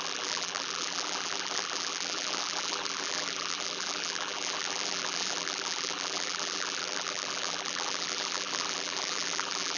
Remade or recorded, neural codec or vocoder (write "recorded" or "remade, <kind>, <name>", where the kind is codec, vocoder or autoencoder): remade, vocoder, BigVGAN v2